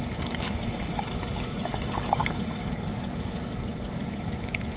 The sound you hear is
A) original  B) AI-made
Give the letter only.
B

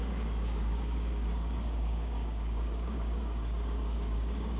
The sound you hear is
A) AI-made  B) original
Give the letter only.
A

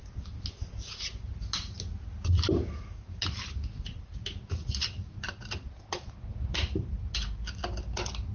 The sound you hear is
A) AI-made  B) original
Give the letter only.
B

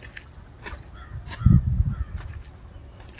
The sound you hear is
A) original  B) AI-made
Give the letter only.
A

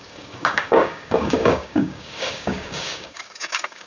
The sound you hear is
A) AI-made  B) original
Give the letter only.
A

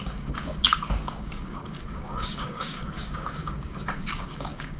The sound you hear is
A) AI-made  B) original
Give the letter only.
A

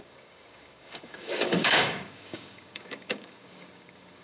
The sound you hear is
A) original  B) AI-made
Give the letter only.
B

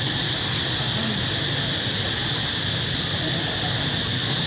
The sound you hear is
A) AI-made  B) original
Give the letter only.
B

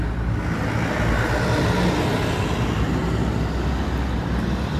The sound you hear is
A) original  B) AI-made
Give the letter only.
A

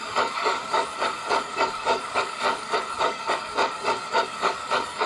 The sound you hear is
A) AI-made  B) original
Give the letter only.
A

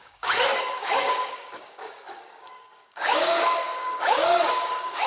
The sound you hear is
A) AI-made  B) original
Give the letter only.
A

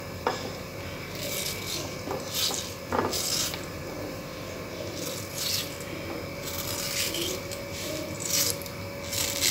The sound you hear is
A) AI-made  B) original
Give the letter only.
B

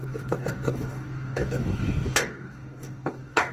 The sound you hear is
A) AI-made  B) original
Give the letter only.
A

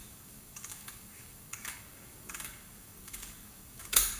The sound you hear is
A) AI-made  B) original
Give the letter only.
A